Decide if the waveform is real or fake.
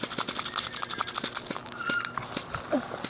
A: real